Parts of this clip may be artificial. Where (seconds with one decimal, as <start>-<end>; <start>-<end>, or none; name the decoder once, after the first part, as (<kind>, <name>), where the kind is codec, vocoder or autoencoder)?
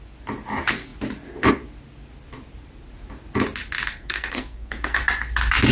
3.9-5.0 (codec, SNAC)